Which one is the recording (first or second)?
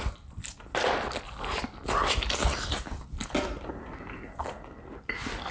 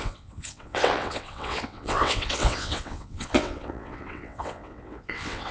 first